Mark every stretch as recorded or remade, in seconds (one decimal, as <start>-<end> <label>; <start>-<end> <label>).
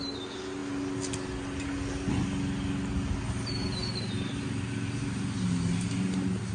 0.0-6.5 recorded